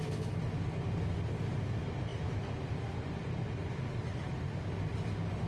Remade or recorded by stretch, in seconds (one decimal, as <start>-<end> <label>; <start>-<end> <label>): 0.0-5.5 recorded

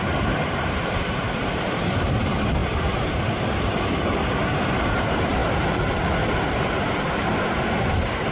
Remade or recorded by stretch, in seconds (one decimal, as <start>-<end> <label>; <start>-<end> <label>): 0.0-5.4 remade; 5.4-6.8 recorded; 6.8-8.3 remade

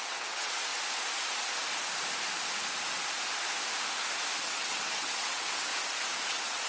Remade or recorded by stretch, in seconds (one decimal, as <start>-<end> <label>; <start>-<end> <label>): 0.0-0.7 remade; 0.7-4.4 recorded; 4.4-5.7 remade; 5.7-6.3 recorded; 6.3-6.7 remade

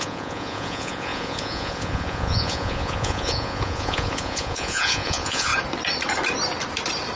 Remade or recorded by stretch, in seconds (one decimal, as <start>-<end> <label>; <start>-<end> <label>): 0.0-5.5 remade; 5.5-7.2 recorded

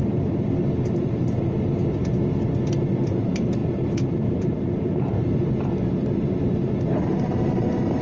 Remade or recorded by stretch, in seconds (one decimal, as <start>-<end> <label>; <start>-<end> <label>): 0.0-1.8 remade; 1.8-2.7 recorded; 2.7-8.0 remade